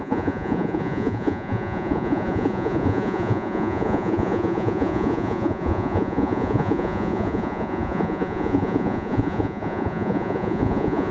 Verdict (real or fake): fake